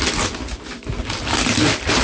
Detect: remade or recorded recorded